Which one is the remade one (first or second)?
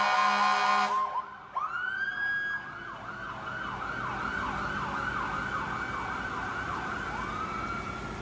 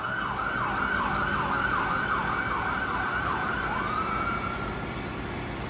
second